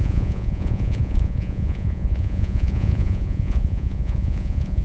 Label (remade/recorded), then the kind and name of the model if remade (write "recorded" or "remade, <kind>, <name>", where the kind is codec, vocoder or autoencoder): remade, vocoder, Vocos